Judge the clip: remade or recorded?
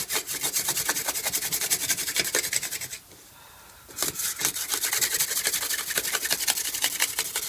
recorded